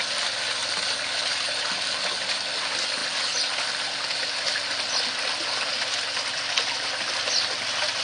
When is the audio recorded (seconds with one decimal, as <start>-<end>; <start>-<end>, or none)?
0.0-8.0